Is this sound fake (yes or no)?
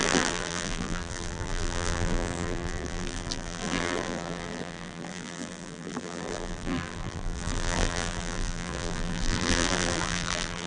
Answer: yes